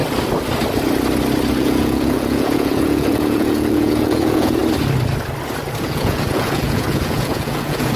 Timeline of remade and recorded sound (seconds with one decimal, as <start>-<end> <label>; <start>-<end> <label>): 0.0-1.6 recorded; 1.6-4.6 remade; 4.6-5.8 recorded; 5.8-8.0 remade